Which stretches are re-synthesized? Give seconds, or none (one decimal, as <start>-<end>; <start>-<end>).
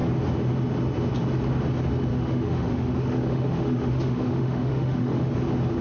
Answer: 2.1-5.3